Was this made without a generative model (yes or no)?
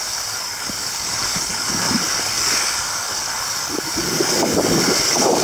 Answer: no